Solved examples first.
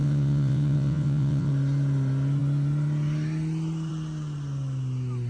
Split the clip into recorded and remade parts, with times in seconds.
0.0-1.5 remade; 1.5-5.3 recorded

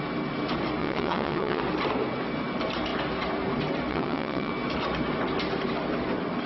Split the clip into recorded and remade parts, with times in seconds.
0.0-0.8 recorded; 0.8-1.6 remade; 1.6-3.9 recorded; 3.9-4.5 remade; 4.5-6.5 recorded

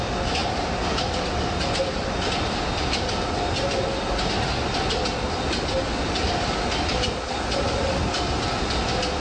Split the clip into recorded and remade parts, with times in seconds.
0.0-9.2 recorded

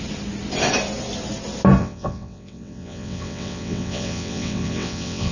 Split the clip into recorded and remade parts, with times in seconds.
0.0-1.8 recorded; 1.8-5.3 remade

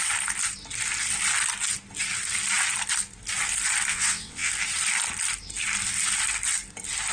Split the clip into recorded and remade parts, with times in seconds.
0.0-3.9 recorded; 3.9-4.5 remade; 4.5-7.1 recorded